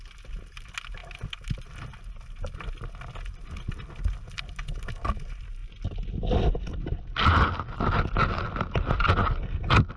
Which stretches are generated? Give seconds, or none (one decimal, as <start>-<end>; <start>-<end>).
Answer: none